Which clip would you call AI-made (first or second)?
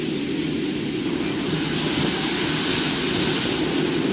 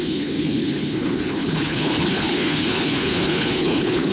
second